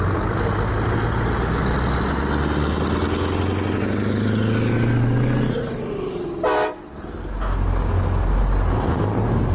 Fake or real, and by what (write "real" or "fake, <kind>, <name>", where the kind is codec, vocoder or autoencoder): real